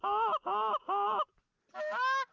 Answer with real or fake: real